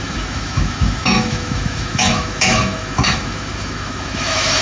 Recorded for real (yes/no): no